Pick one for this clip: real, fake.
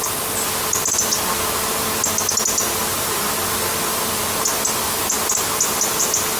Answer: real